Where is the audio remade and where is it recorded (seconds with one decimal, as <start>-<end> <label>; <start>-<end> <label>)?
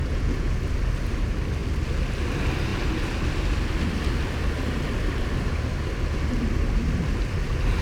0.0-0.6 remade; 0.6-7.8 recorded